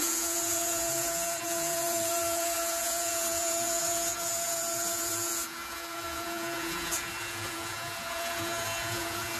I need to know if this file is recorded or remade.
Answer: remade